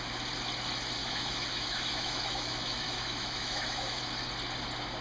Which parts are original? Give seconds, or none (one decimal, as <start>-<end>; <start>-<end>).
0.0-1.0; 4.0-5.0